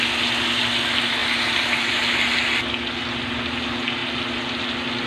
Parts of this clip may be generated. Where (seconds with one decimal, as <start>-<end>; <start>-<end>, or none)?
1.2-1.8